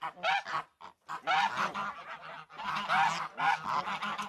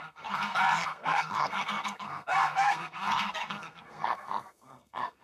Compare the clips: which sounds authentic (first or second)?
first